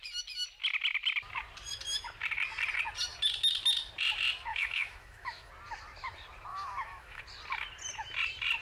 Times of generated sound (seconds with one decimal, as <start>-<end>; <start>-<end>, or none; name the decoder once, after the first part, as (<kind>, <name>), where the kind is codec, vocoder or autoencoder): 4.5-5.5 (autoencoder, DAC-VAE); 6.5-7.2